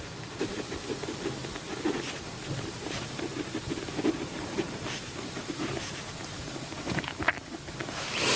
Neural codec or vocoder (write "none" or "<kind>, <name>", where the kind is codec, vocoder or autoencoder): none